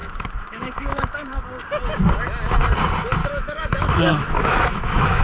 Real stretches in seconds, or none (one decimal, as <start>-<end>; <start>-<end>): 1.4-3.2